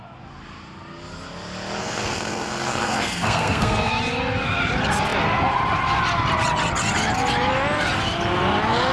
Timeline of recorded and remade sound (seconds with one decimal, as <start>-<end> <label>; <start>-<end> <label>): 0.0-1.8 recorded; 1.8-3.9 remade; 3.9-8.9 recorded